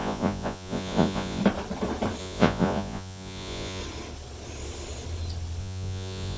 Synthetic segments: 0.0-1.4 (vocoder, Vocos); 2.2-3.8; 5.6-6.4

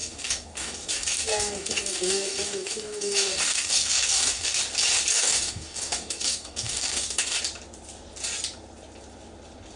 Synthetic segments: 0.0-4.6 (codec, DAC); 5.1-7.4

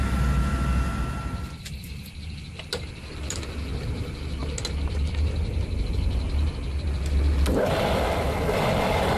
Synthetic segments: none

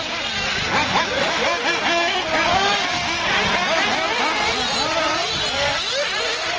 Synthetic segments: 0.8-1.7 (vocoder, BigVGAN v2)